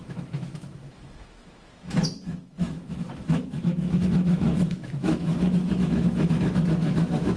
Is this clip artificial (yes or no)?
yes